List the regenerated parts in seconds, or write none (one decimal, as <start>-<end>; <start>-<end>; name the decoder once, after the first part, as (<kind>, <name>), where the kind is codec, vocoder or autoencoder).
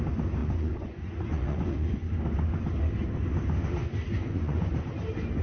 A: 0.4-2.1 (vocoder, Vocos); 4.2-4.7